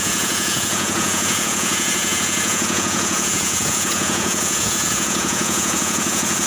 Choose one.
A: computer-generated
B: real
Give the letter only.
A